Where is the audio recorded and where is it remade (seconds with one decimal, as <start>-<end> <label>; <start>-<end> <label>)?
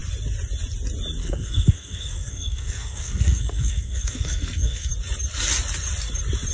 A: 0.0-1.2 recorded; 1.2-4.9 remade; 4.9-6.5 recorded